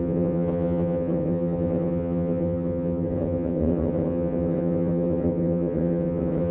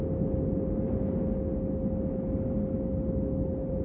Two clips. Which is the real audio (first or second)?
second